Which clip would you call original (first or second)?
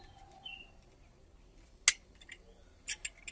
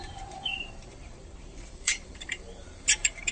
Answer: first